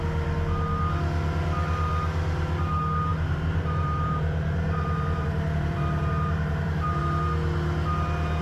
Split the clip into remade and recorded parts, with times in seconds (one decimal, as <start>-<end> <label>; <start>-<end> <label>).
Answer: 0.0-3.1 recorded; 3.1-7.0 remade; 7.0-8.4 recorded